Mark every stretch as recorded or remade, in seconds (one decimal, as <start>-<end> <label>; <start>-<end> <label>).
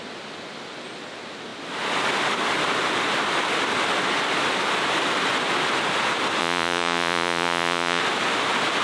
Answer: 0.0-6.4 recorded; 6.4-8.0 remade; 8.0-8.8 recorded